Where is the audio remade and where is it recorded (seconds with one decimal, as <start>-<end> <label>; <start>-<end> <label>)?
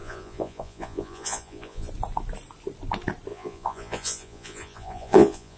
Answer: 0.0-1.9 remade; 1.9-3.3 recorded; 3.3-5.6 remade